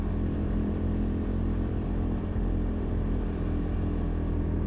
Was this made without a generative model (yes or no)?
no